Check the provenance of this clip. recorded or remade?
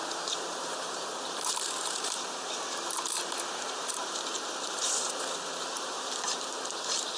remade